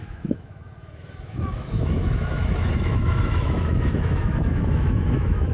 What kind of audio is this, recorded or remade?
remade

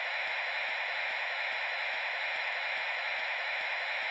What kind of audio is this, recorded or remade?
remade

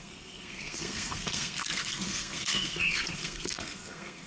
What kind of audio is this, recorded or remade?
remade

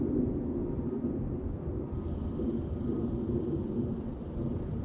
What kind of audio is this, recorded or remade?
recorded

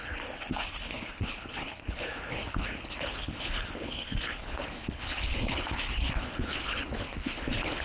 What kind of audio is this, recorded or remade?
remade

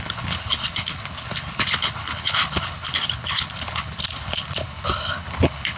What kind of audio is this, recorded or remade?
remade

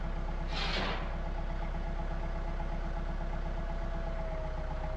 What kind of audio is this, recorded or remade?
recorded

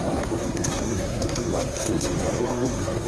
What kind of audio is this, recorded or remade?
remade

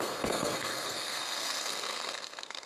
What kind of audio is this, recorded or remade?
remade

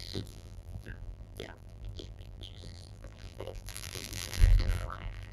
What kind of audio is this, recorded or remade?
remade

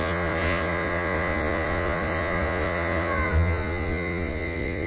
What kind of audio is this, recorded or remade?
remade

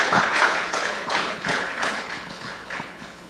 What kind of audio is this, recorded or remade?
remade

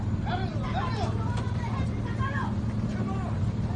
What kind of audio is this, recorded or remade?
recorded